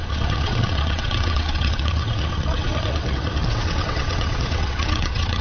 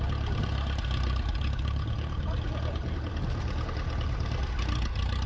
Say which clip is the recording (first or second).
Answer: second